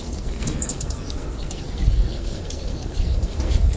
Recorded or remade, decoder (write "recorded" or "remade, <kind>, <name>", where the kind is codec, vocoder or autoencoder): remade, codec, SNAC